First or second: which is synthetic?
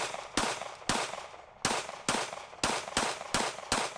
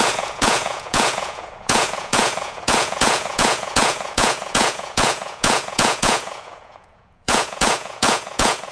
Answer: second